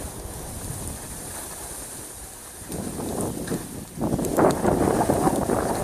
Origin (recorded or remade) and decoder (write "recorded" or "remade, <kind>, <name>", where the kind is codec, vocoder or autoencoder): recorded